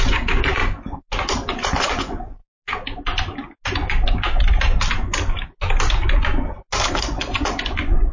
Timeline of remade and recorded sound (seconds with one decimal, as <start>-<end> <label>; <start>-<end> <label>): 0.0-0.6 remade; 0.6-1.8 recorded; 1.8-2.4 remade; 2.4-7.0 recorded; 7.0-8.1 remade